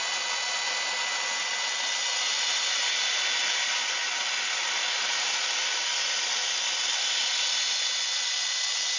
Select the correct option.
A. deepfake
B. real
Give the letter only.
B